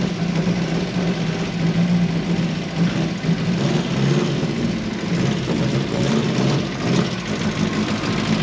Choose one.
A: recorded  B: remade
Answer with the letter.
A